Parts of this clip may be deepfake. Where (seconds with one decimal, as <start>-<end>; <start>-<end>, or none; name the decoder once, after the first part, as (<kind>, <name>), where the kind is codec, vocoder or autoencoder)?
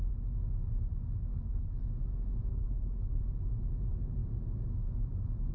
1.3-1.9 (codec, HILCodec); 2.5-3.2